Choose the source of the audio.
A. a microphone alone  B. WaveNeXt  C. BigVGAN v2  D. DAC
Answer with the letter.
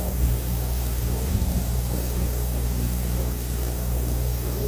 D